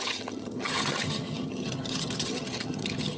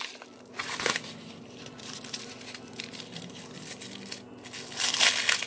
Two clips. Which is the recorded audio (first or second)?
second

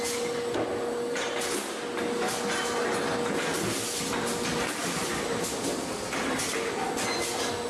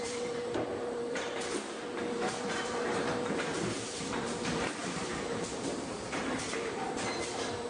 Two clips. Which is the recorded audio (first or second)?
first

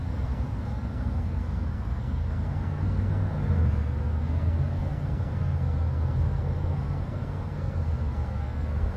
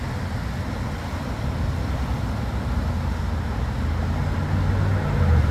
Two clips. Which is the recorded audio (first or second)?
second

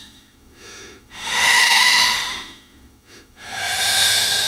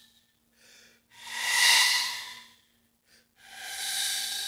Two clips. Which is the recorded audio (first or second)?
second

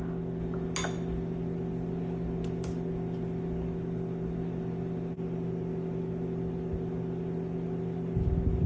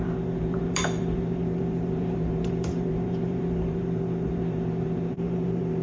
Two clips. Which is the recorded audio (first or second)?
first